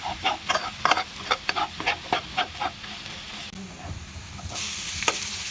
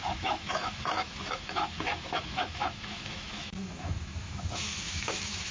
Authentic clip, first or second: first